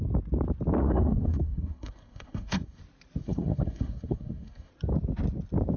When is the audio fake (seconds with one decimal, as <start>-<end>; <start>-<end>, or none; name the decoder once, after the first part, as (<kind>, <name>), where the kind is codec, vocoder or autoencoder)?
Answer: 0.8-2.8 (codec, SNAC); 3.2-4.7